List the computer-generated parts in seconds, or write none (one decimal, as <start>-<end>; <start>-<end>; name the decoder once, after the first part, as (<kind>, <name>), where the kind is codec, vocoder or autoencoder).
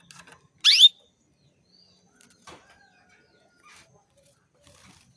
none